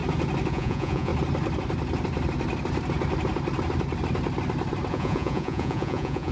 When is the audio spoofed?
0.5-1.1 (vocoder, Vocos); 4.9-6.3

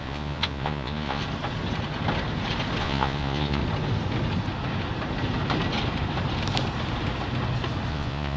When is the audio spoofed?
0.0-1.2 (vocoder, Vocos); 2.8-3.6; 7.9-8.4

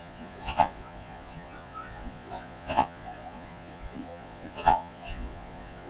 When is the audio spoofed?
0.0-5.9 (vocoder, Vocos)

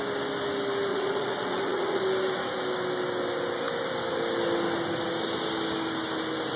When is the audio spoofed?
0.9-2.0 (vocoder, Vocos)

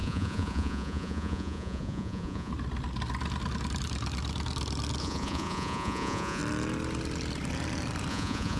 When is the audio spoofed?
0.0-2.5 (vocoder, Vocos); 5.0-6.4; 8.1-8.6

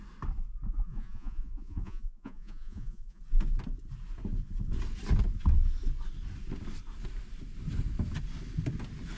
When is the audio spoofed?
0.7-3.2 (vocoder, Vocos)